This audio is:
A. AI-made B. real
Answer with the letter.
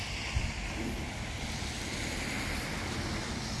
B